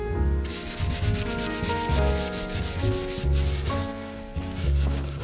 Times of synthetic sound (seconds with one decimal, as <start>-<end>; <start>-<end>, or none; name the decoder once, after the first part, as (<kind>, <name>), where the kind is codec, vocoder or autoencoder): 0.5-2.1 (codec, DAC); 3.9-5.2